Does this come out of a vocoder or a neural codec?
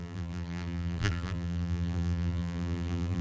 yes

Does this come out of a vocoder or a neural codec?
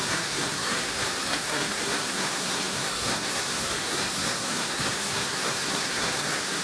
yes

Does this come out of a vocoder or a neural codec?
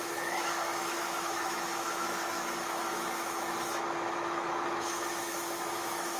yes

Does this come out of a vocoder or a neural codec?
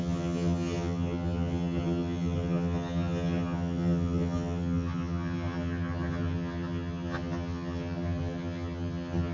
yes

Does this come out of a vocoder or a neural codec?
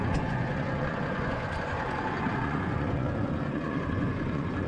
yes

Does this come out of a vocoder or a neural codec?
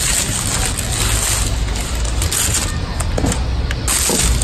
no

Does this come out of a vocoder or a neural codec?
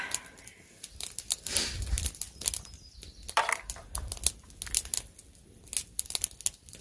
no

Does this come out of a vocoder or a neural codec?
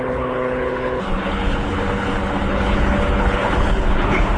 yes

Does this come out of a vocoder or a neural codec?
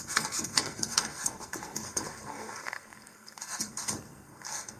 yes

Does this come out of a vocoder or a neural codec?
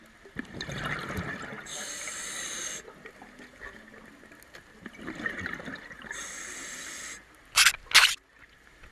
no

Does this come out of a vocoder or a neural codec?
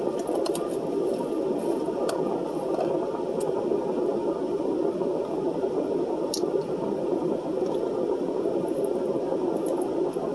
no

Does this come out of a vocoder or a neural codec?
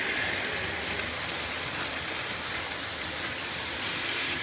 no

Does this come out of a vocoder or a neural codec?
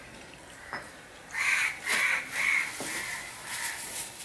yes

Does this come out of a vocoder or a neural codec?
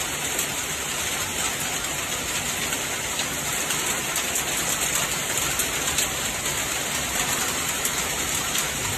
no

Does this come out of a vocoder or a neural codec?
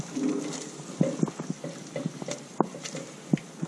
no